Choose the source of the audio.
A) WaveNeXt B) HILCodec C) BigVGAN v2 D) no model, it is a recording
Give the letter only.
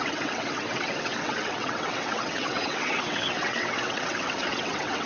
A